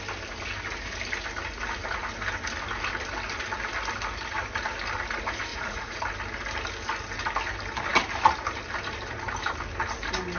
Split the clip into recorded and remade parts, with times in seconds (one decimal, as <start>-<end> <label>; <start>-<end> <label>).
0.0-5.5 recorded; 5.5-6.0 remade; 6.0-10.4 recorded